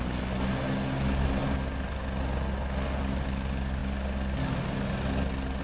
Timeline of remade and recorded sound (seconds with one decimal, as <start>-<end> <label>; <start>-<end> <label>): 0.0-5.6 recorded